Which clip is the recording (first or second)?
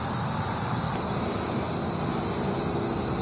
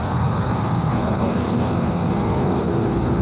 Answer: first